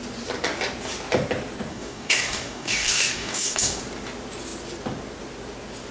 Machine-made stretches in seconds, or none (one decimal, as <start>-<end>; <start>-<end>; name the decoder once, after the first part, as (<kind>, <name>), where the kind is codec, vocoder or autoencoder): 1.7-3.8 (codec, DAC)